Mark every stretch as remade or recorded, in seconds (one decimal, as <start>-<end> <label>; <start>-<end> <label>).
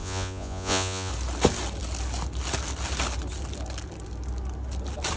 0.0-1.1 remade; 1.1-5.2 recorded